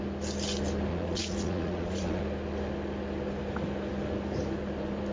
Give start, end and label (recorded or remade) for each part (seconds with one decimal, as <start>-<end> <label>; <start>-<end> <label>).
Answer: 0.0-0.9 recorded; 0.9-2.2 remade; 2.2-5.1 recorded